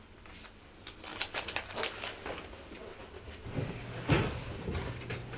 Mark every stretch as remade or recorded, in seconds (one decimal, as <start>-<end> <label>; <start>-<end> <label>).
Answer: 0.0-5.4 recorded